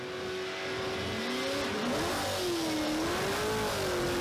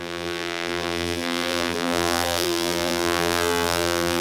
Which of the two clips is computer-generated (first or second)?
second